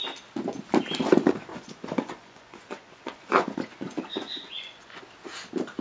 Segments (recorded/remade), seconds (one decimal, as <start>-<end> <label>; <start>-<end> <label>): 0.0-1.5 recorded; 1.5-5.0 remade; 5.0-5.8 recorded

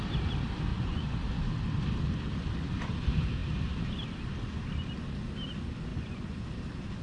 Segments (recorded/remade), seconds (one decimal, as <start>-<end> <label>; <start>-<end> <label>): 0.0-0.7 recorded; 0.7-1.2 remade; 1.2-5.9 recorded; 5.9-6.4 remade; 6.4-7.0 recorded

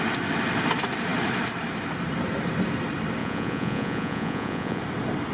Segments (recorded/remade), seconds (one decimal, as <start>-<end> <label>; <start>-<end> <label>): 0.0-3.2 recorded; 3.2-4.8 remade; 4.8-5.3 recorded

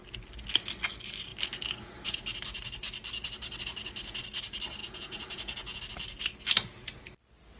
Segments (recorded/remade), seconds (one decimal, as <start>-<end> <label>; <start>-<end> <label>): 0.0-4.8 recorded; 4.8-5.8 remade; 5.8-7.6 recorded

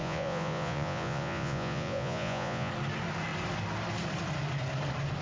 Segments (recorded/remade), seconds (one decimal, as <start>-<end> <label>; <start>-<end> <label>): 0.0-2.7 remade; 2.7-5.2 recorded

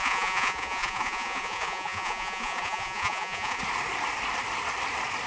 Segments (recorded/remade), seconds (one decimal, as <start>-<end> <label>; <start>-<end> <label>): 0.0-3.6 remade; 3.6-5.3 recorded

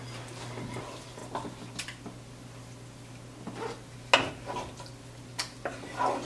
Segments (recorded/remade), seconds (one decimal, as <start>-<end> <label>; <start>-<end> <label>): 0.0-6.2 recorded